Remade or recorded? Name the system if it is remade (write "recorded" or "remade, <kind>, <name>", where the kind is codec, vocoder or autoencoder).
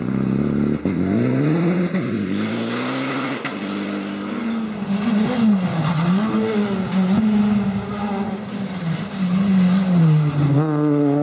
recorded